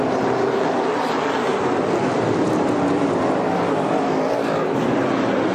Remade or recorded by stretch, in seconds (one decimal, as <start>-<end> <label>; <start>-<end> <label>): 0.0-1.5 remade; 1.5-4.8 recorded; 4.8-5.5 remade